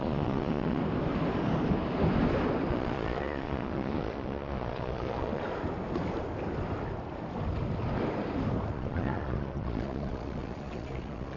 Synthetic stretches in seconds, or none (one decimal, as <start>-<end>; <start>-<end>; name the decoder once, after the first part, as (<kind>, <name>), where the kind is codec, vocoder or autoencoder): 0.0-0.8 (vocoder, Vocos); 2.7-5.4; 8.7-11.4

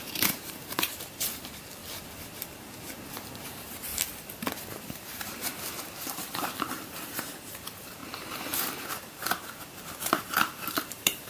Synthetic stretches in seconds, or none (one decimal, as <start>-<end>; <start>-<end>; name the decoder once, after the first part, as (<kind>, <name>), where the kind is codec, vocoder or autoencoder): 0.0-1.8 (vocoder, BigVGAN v2); 2.4-3.9; 4.7-11.3

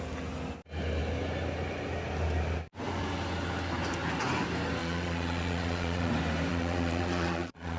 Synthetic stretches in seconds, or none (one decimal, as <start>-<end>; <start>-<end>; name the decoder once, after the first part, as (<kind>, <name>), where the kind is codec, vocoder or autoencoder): 4.8-6.1 (vocoder, Vocos); 6.5-7.8